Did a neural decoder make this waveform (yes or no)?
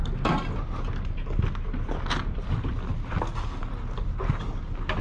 no